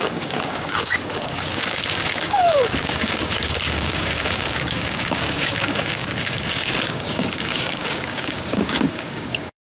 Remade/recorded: remade